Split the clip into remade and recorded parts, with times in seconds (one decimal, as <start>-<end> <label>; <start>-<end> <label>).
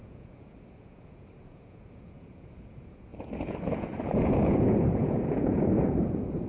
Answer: 0.0-6.5 remade